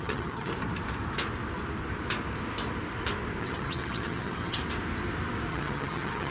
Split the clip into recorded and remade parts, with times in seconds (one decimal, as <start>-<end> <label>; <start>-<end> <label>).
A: 0.0-0.5 remade; 0.5-3.4 recorded; 3.4-4.6 remade; 4.6-5.5 recorded; 5.5-6.3 remade

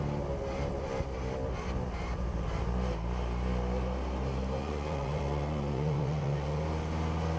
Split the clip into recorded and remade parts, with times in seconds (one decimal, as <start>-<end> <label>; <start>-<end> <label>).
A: 0.0-4.6 recorded; 4.6-6.6 remade; 6.6-7.4 recorded

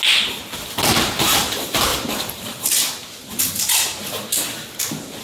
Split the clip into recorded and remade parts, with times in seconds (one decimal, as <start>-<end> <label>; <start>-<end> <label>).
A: 0.0-1.9 recorded; 1.9-3.3 remade; 3.3-5.2 recorded

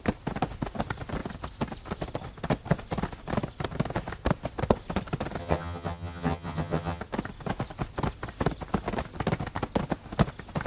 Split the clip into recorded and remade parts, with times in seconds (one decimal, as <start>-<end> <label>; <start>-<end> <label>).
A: 0.0-5.4 recorded; 5.4-7.0 remade; 7.0-10.7 recorded

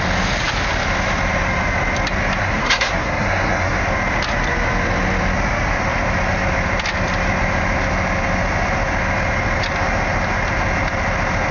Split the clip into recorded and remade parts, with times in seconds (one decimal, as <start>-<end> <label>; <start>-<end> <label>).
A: 0.0-2.4 recorded; 2.4-3.8 remade; 3.8-11.5 recorded

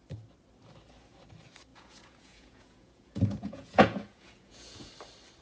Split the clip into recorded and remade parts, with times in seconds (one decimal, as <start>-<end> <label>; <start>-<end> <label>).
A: 0.0-1.7 recorded; 1.7-4.9 remade; 4.9-5.4 recorded

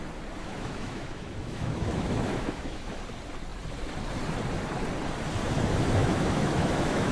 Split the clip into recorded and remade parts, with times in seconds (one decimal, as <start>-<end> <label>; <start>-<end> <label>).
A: 0.0-0.4 recorded; 0.4-3.0 remade; 3.0-6.0 recorded; 6.0-7.1 remade